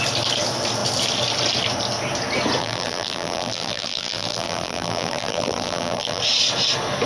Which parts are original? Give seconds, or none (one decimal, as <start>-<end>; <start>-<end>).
0.0-2.6; 6.2-7.1